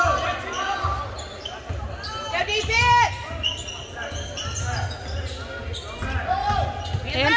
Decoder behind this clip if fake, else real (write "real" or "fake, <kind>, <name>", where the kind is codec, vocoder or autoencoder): real